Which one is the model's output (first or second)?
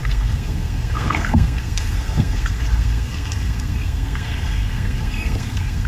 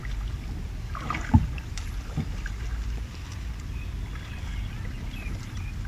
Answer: first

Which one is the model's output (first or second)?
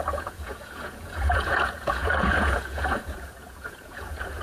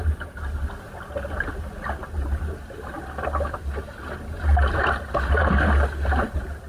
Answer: first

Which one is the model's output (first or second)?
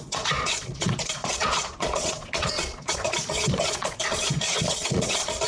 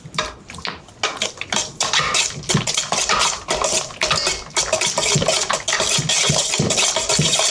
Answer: first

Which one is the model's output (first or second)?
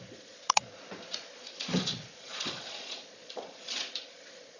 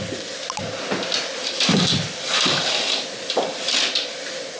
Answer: first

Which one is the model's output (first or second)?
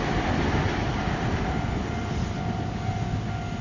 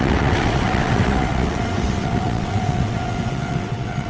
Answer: second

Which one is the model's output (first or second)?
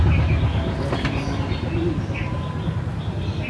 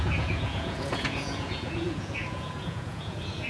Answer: second